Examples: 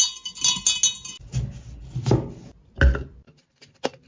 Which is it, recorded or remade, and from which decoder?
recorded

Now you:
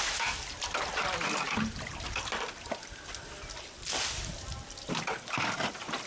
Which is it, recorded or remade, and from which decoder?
remade, vocoder, BigVGAN v2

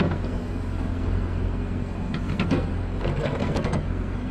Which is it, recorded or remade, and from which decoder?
remade, codec, SNAC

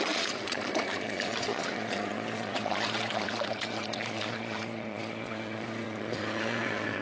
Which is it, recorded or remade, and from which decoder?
remade, vocoder, Vocos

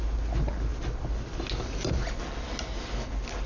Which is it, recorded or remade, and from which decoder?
recorded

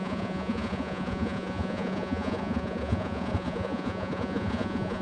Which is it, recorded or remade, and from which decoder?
remade, vocoder, Vocos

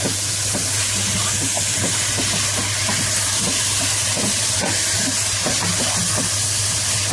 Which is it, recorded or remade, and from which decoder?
recorded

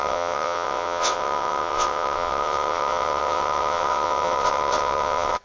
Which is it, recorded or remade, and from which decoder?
remade, vocoder, WaveNeXt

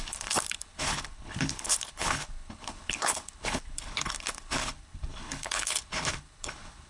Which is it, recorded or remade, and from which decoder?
remade, codec, HILCodec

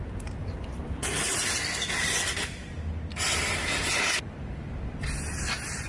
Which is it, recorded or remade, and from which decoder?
recorded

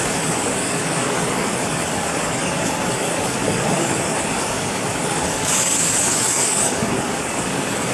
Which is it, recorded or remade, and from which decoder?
remade, codec, DAC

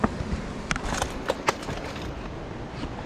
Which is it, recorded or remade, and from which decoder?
recorded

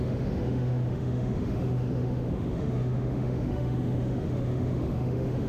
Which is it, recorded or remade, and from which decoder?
remade, autoencoder, DAC-VAE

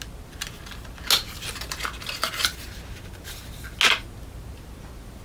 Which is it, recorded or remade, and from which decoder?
recorded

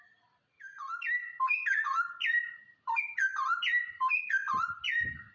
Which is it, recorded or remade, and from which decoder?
recorded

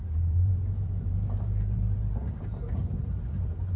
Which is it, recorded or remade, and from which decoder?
remade, vocoder, BigVGAN v2